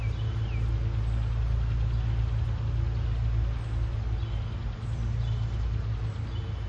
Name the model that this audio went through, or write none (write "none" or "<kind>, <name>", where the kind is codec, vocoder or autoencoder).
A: none